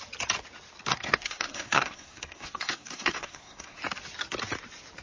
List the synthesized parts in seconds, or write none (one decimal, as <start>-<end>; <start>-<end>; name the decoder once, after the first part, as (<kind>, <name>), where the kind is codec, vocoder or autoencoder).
0.9-3.8 (codec, SNAC)